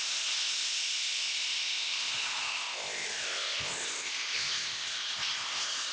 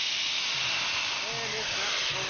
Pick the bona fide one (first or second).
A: second